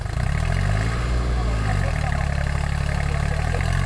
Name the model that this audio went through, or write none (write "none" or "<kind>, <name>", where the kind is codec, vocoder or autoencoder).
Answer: none